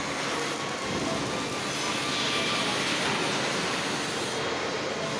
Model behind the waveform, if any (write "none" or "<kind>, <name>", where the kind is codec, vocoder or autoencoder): none